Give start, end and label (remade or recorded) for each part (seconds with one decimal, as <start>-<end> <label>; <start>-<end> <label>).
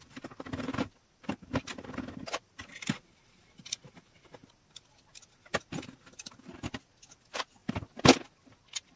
0.0-9.0 recorded